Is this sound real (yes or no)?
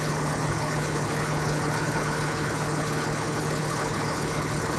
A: no